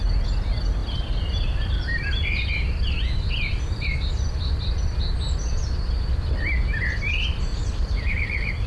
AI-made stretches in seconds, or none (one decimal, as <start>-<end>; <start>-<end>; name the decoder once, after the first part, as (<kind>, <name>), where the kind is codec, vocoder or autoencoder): 0.8-2.5 (vocoder, BigVGAN v2); 7.5-8.7